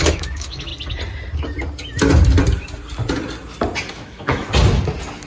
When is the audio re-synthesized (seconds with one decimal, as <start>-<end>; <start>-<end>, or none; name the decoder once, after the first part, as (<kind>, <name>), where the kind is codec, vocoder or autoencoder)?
0.0-0.7 (autoencoder, DAC-VAE); 3.9-4.4